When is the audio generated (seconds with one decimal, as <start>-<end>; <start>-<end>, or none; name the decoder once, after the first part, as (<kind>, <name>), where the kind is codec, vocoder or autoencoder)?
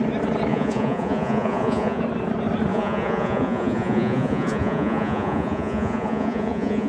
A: 0.5-2.0 (vocoder, Vocos); 2.7-6.9